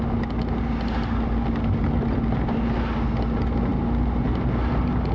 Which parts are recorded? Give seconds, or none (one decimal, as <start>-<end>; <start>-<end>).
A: 0.0-5.1